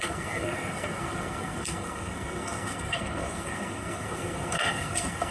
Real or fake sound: fake